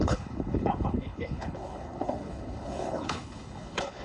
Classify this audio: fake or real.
fake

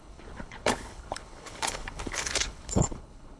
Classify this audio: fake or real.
fake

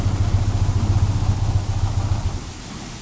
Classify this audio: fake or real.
real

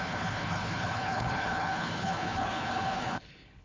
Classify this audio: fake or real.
fake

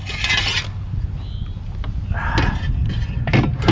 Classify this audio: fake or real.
real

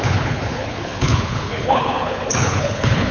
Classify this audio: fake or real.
fake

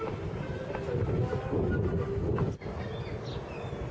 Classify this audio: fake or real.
real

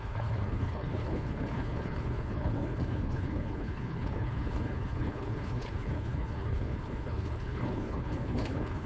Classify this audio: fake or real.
fake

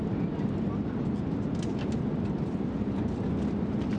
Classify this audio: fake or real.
real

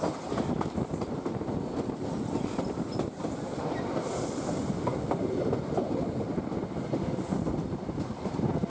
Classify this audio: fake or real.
real